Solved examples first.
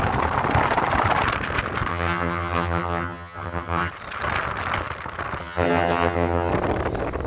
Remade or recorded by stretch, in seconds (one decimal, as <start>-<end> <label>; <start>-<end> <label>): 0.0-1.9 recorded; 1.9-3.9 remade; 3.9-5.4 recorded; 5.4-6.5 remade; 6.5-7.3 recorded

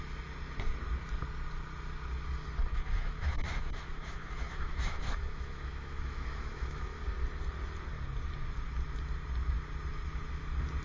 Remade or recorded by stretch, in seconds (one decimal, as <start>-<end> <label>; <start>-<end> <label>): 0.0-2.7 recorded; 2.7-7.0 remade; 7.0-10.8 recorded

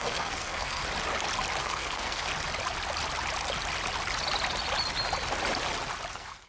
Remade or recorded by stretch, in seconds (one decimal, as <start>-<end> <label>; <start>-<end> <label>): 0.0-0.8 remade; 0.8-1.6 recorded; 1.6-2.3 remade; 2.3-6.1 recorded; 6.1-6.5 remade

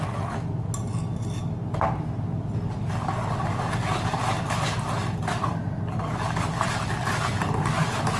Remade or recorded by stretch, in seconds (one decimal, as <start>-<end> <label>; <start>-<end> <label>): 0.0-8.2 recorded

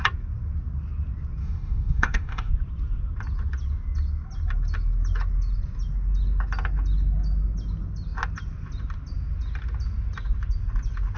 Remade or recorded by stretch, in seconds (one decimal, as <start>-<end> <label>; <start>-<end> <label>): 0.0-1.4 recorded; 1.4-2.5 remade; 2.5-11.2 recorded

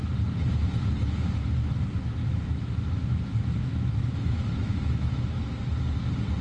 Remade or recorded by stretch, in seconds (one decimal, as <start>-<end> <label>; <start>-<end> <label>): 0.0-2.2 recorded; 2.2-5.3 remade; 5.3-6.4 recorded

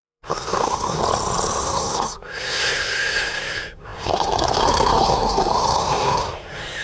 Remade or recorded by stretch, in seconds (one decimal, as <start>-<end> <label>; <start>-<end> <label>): 0.0-1.0 remade; 1.0-1.6 recorded; 1.6-6.8 remade